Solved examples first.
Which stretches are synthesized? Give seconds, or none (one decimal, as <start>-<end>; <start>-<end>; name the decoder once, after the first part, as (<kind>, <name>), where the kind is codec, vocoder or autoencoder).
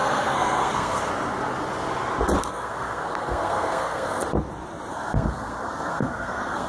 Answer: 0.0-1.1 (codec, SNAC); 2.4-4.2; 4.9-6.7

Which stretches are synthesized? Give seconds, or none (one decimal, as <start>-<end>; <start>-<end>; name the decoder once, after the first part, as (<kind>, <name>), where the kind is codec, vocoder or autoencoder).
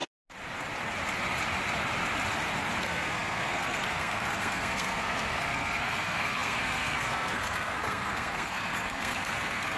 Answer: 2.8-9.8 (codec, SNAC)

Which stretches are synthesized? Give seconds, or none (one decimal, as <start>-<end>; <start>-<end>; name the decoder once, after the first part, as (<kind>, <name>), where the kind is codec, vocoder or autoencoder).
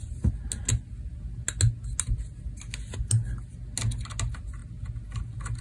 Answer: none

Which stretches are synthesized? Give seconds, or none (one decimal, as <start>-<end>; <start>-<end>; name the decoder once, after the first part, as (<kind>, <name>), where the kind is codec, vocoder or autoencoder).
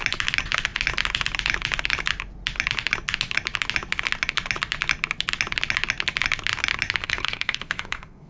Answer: 7.0-8.3 (codec, SNAC)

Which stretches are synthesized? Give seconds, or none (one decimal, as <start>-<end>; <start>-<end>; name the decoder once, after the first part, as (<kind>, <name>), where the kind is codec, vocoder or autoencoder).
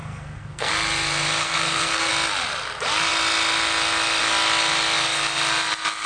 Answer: 0.0-0.7 (codec, SNAC); 1.4-2.1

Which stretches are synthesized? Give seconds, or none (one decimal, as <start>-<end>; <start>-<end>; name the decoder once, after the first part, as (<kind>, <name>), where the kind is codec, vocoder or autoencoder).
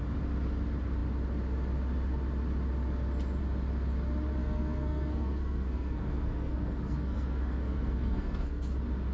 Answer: 4.4-8.7 (codec, SNAC)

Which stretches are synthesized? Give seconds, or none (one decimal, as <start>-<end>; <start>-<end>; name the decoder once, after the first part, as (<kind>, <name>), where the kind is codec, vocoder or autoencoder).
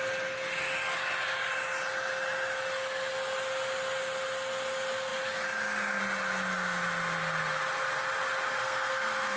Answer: 8.6-9.4 (codec, SNAC)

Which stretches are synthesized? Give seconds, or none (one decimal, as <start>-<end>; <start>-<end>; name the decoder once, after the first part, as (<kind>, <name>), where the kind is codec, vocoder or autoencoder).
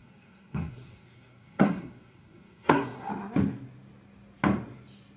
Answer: 0.0-3.1 (codec, SNAC)